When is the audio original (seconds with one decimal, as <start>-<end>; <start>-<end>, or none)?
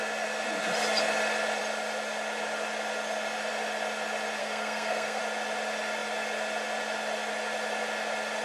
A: 0.0-4.4; 5.2-8.4